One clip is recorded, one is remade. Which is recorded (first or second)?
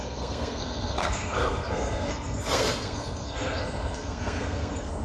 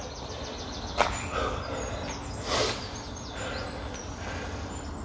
second